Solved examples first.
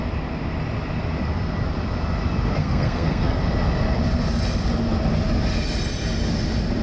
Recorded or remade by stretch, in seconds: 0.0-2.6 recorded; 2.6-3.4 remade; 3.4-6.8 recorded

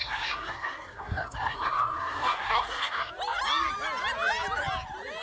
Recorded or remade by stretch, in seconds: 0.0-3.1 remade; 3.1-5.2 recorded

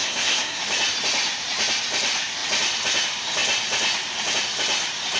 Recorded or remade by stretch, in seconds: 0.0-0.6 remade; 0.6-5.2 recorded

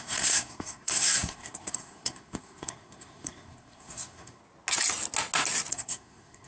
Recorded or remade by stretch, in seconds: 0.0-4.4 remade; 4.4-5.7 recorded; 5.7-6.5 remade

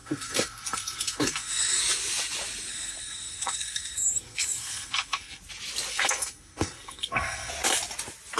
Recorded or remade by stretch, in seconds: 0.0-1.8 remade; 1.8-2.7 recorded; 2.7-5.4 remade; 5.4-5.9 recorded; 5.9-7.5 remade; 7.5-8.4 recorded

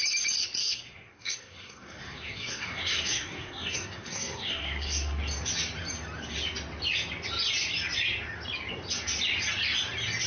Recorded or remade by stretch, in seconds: 0.0-0.6 recorded; 0.6-5.2 remade; 5.2-10.3 recorded

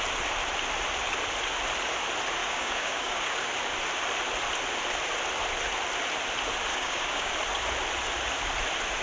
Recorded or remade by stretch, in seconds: 0.0-2.4 recorded; 2.4-3.5 remade; 3.5-6.7 recorded; 6.7-7.3 remade; 7.3-9.0 recorded